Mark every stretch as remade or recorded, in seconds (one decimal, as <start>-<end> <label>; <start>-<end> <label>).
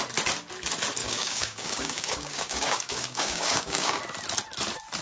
0.0-1.0 recorded; 1.0-4.0 remade; 4.0-5.0 recorded